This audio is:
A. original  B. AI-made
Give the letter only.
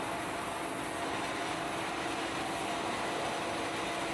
A